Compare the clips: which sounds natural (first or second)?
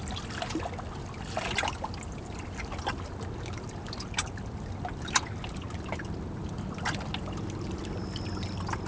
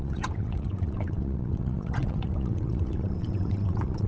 first